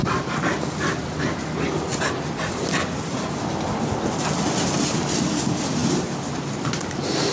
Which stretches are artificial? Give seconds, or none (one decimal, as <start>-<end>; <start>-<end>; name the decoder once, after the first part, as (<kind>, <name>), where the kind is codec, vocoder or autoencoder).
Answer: none